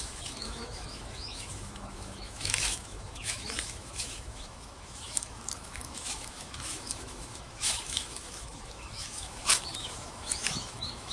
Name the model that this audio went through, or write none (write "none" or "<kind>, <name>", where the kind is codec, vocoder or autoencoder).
autoencoder, DAC-VAE